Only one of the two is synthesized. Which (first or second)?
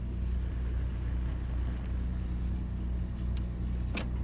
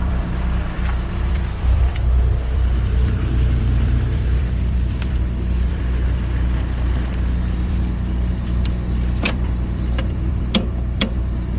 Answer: second